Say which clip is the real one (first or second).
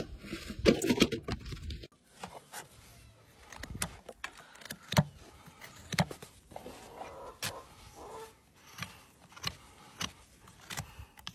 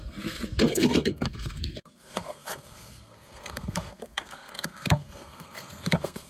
first